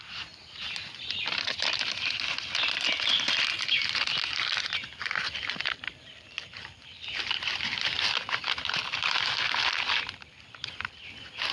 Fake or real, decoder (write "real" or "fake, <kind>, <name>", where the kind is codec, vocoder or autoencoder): real